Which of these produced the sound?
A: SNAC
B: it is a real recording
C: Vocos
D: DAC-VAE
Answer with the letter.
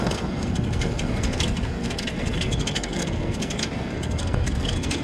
A